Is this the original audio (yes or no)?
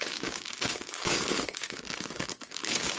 no